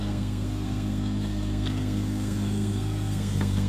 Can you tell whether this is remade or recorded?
remade